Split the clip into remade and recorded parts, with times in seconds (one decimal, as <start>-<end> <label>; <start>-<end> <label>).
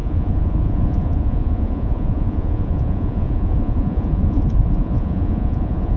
0.0-6.0 remade